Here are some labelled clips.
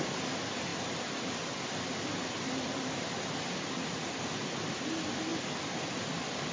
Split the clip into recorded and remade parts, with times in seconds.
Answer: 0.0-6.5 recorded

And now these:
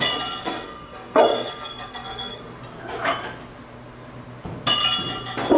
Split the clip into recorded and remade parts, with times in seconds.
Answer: 0.0-0.4 recorded; 0.4-2.4 remade; 2.4-5.6 recorded

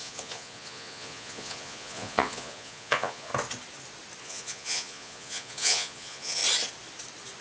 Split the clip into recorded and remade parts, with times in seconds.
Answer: 0.0-3.3 remade; 3.3-4.2 recorded; 4.2-6.4 remade; 6.4-7.4 recorded